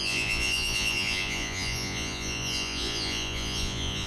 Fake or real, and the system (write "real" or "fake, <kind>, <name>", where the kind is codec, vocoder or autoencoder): fake, vocoder, Vocos